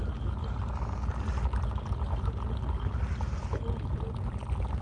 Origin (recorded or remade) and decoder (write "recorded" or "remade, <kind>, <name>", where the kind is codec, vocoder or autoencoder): recorded